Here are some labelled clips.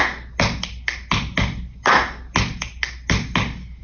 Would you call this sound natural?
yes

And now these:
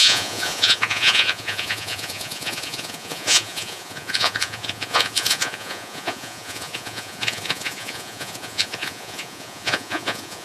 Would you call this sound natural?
no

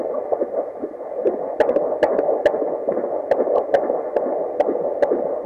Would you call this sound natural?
yes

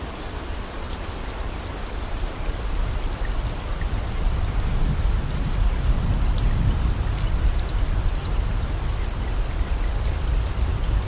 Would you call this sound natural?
yes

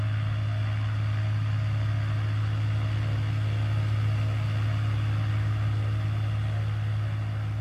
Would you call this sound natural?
yes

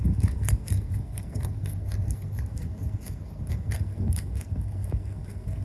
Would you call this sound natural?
no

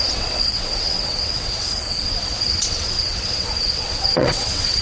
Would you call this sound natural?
no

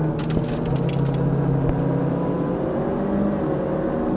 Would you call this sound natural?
yes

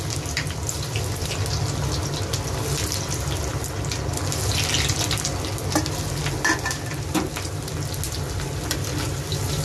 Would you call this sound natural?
yes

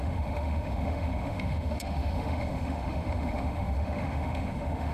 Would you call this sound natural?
no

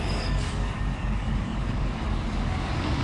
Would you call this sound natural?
no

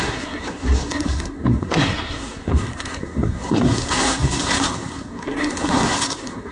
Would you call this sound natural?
no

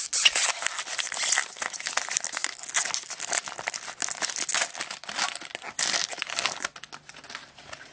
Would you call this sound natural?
yes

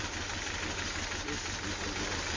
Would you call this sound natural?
yes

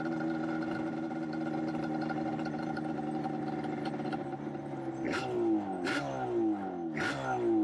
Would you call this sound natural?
yes